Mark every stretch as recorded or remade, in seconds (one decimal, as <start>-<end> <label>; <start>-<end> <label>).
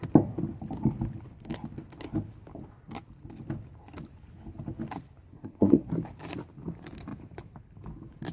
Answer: 0.0-5.3 recorded; 5.3-5.9 remade; 5.9-8.3 recorded